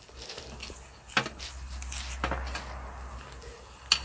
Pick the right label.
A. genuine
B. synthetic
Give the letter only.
A